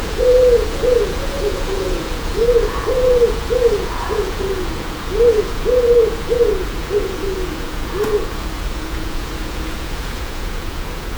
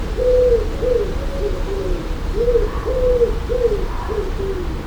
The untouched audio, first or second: second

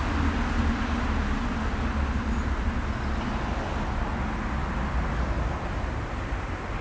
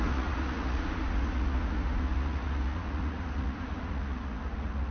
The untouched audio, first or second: first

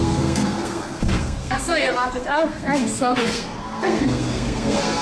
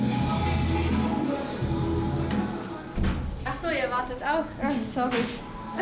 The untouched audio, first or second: second